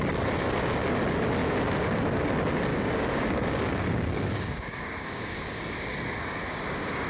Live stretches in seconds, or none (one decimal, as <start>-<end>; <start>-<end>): 0.0-2.7

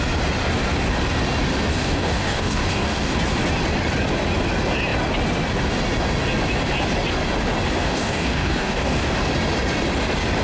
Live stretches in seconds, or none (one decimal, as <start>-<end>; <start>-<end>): 0.0-1.7; 3.2-7.8; 9.2-10.4